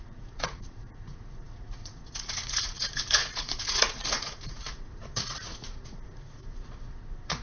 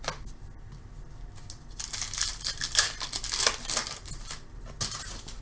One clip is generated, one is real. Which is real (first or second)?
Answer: second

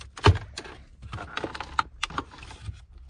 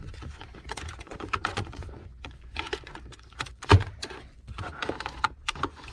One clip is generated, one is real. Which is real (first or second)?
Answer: first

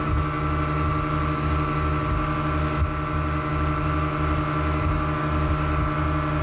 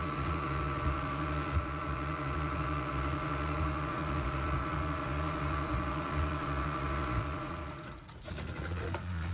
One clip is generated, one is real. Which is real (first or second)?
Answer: first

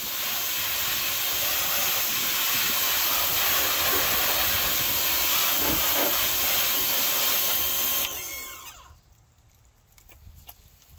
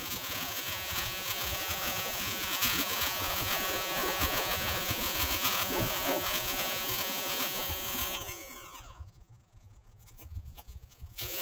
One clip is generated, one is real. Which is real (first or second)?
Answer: first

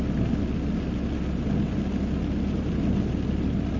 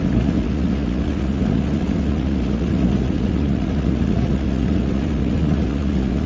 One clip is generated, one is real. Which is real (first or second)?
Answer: first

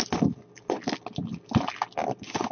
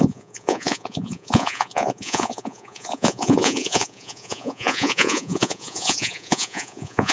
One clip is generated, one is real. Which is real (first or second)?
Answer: first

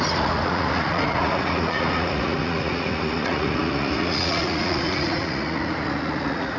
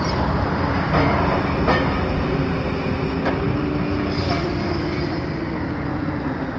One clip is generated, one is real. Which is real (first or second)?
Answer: second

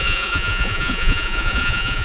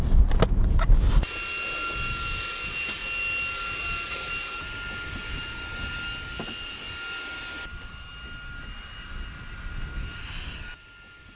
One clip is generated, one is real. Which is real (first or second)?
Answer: second